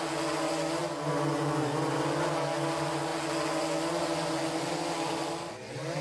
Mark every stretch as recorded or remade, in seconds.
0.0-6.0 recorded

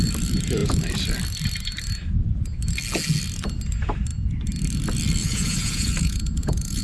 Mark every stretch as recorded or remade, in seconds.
0.0-5.2 recorded; 5.2-6.8 remade

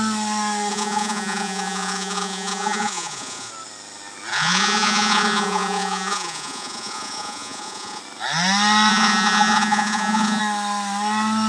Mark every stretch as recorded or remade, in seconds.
0.0-0.7 recorded; 0.7-3.5 remade; 3.5-4.3 recorded; 4.3-8.0 remade; 8.0-8.9 recorded; 8.9-10.4 remade; 10.4-11.5 recorded

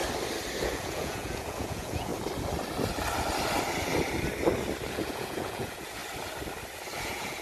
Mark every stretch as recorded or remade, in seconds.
0.0-0.6 recorded; 0.6-2.1 remade; 2.1-4.9 recorded; 4.9-6.0 remade; 6.0-7.0 recorded; 7.0-7.4 remade